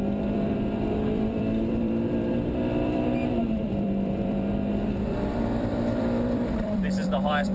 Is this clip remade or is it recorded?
remade